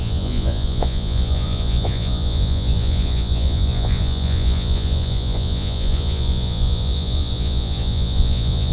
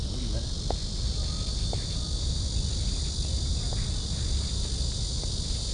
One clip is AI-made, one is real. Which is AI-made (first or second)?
first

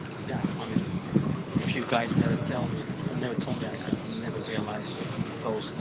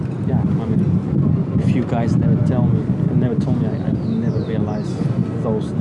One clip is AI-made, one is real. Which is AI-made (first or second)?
first